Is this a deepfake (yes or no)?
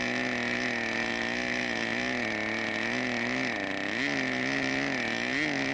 no